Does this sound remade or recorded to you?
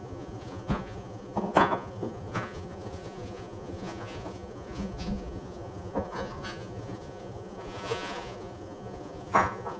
remade